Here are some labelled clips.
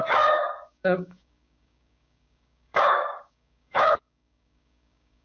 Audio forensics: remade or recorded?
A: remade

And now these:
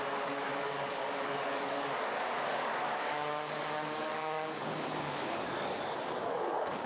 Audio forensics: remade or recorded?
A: remade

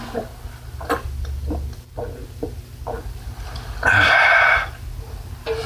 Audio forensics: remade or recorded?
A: recorded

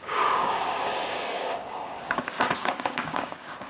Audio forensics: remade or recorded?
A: remade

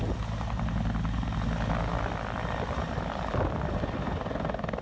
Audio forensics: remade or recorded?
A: recorded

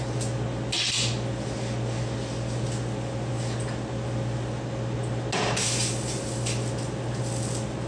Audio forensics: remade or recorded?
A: recorded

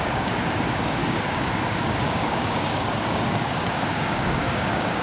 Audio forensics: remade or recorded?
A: remade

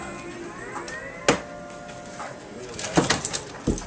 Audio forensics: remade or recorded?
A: recorded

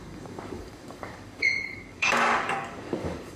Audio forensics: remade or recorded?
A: remade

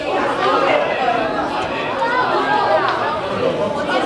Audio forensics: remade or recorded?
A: recorded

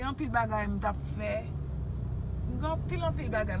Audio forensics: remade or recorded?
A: recorded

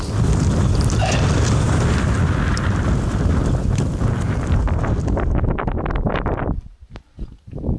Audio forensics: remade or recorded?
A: recorded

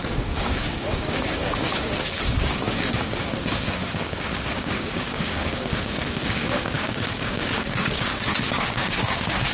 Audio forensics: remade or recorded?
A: remade